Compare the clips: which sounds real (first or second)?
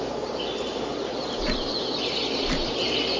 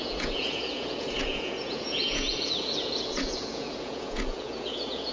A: first